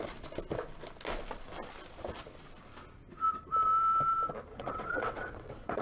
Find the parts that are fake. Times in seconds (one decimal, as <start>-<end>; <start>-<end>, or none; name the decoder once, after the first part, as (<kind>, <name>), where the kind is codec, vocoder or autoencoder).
4.5-5.8 (vocoder, WaveNeXt)